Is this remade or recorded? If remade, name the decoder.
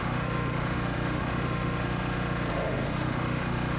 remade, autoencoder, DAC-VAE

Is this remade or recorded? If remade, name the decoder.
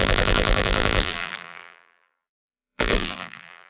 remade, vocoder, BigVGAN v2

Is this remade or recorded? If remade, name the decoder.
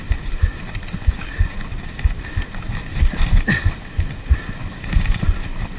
recorded